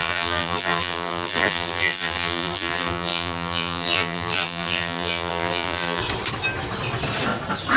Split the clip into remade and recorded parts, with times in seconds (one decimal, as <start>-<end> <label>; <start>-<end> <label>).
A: 0.0-6.0 remade; 6.0-7.8 recorded